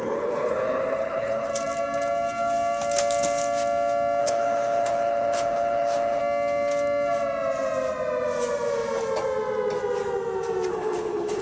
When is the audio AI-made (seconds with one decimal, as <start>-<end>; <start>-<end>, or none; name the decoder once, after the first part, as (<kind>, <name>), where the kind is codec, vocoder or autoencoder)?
0.0-1.5 (codec, HILCodec); 4.2-6.2; 10.7-11.4